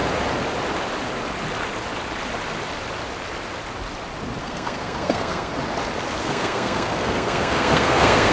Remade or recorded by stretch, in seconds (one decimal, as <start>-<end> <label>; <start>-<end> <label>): 0.0-4.4 recorded; 4.4-5.5 remade; 5.5-6.2 recorded; 6.2-8.3 remade